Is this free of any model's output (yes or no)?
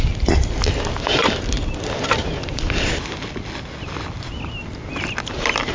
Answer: yes